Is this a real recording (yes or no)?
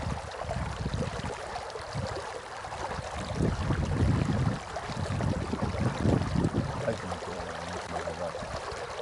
no